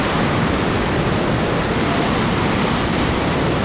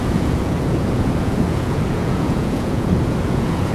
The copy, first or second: second